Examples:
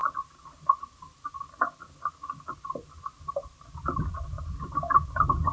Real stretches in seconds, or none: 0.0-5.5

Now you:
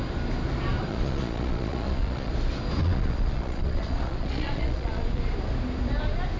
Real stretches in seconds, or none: 0.0-0.9; 2.3-2.8; 5.2-6.4